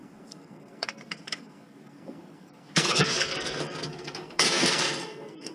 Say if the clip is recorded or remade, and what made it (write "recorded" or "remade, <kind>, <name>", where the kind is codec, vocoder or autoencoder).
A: remade, codec, SNAC